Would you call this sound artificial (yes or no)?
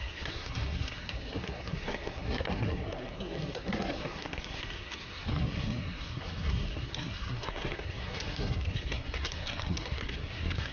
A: yes